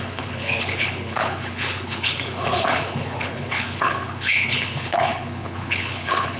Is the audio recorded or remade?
remade